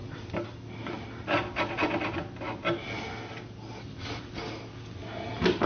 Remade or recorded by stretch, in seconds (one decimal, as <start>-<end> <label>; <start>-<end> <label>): 0.0-5.7 recorded

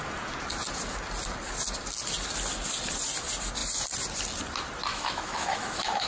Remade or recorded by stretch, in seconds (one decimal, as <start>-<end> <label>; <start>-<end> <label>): 0.0-4.9 recorded; 4.9-6.1 remade

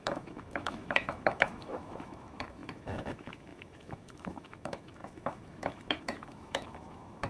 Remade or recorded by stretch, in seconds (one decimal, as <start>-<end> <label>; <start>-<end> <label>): 0.0-7.3 remade